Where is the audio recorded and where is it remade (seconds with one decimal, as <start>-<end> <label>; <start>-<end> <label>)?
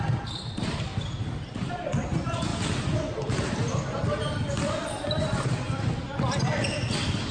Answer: 0.0-7.3 recorded